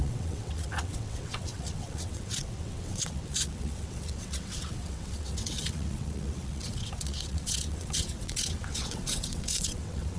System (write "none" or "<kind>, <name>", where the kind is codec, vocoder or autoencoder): vocoder, WaveNeXt